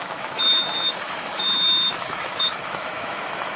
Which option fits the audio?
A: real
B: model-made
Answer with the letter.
B